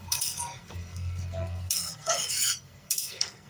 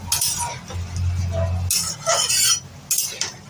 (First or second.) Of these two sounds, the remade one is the first